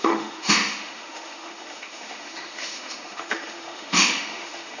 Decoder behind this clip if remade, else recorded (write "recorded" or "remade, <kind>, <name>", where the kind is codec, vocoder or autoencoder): remade, autoencoder, DAC-VAE